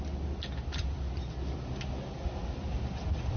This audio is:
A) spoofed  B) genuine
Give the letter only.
B